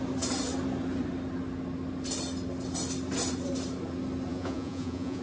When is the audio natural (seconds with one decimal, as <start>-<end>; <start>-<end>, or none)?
0.0-4.3